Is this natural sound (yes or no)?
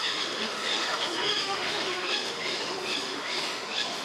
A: no